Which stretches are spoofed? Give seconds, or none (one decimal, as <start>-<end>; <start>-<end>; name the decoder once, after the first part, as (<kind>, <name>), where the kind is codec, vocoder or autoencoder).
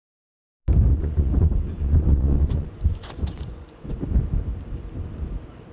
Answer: 0.9-4.0 (vocoder, Vocos)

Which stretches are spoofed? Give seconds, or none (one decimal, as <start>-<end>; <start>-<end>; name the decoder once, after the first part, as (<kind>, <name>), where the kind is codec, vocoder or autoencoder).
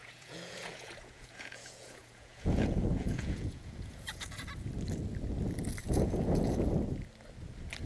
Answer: 0.0-4.5 (vocoder, Vocos); 5.8-6.7